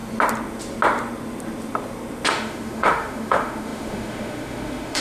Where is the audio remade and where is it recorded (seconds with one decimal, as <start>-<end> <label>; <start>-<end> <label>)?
0.0-2.3 recorded; 2.3-5.0 remade